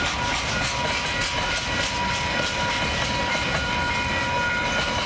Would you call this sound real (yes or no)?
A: yes